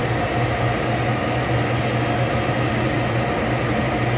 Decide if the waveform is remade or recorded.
recorded